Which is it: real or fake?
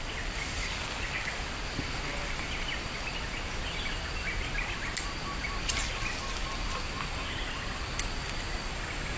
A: real